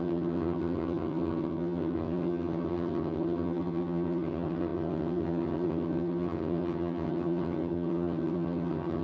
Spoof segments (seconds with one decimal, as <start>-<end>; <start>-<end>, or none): 0.0-9.0